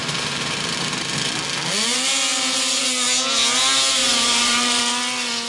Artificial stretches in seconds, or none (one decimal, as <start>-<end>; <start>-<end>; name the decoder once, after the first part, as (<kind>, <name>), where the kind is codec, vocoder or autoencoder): 0.0-1.3 (vocoder, BigVGAN v2); 2.3-2.8; 4.0-4.8